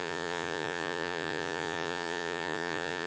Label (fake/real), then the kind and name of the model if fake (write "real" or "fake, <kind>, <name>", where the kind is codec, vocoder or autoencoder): fake, vocoder, Vocos